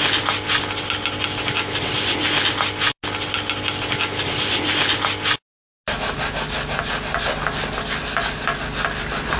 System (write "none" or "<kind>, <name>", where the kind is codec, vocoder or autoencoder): none